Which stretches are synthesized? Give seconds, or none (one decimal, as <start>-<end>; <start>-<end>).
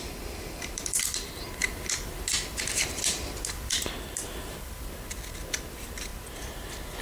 0.0-1.6; 3.7-6.1